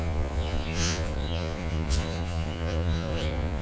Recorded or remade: remade